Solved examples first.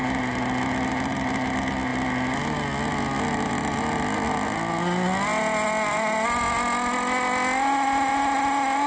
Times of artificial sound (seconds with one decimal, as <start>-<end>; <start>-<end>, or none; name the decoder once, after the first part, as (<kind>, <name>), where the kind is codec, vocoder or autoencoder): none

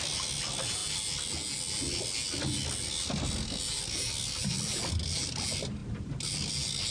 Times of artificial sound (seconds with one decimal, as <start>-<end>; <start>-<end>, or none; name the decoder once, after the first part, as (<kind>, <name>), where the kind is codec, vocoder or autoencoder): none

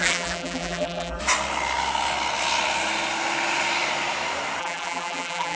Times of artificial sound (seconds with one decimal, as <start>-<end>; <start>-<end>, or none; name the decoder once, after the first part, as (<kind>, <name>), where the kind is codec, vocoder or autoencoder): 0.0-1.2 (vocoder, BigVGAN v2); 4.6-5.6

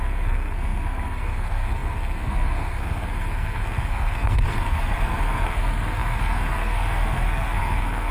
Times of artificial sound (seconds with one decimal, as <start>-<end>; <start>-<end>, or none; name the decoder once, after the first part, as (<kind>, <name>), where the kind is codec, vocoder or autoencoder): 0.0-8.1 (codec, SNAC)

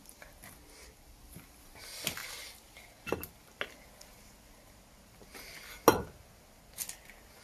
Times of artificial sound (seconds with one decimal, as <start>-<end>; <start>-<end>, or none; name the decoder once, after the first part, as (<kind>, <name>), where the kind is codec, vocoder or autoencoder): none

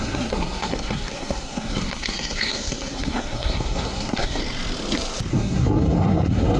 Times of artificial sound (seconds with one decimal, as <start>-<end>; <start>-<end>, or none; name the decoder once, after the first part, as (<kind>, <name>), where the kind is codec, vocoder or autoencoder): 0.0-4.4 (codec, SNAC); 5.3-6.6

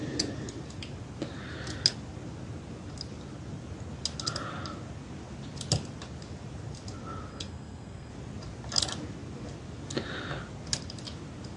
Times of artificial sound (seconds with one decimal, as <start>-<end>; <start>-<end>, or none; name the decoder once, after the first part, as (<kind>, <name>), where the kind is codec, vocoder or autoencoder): 7.3-8.1 (codec, SNAC)